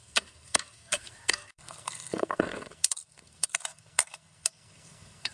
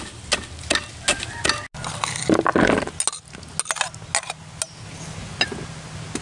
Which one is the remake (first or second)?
first